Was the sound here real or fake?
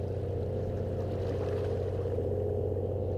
real